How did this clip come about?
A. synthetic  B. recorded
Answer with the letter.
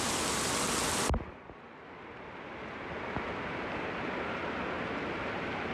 B